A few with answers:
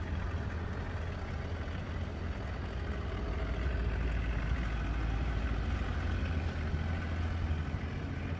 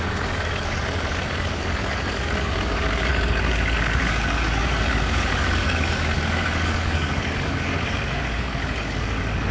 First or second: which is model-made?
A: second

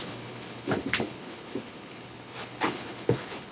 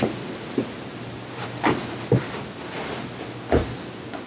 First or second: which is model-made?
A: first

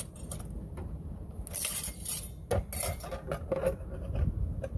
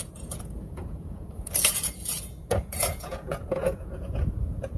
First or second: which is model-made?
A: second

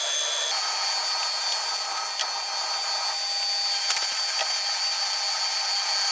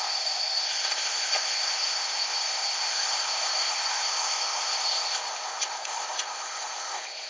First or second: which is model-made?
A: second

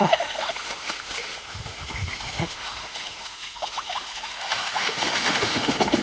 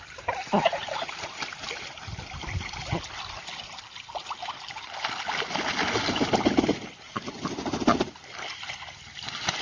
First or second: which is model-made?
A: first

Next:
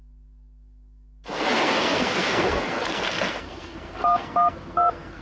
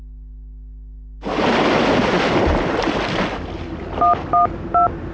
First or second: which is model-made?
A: first